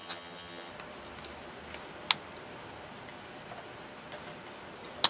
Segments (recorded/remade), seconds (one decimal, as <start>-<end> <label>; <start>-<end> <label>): 0.0-0.7 remade; 0.7-5.1 recorded